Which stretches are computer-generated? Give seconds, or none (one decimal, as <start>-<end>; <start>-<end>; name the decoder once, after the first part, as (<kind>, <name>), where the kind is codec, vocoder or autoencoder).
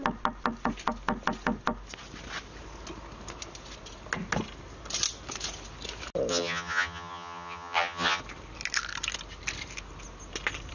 6.3-8.2 (vocoder, HiFi-GAN)